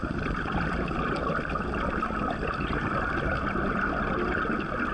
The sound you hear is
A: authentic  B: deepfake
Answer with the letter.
A